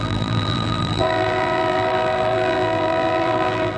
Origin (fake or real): fake